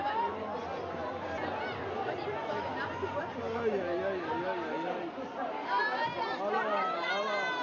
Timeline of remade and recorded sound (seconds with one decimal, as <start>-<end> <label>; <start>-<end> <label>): 0.0-7.6 recorded